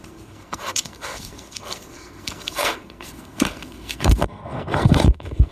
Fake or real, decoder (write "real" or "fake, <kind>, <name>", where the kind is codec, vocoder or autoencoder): fake, codec, SNAC